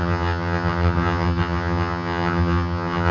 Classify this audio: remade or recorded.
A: remade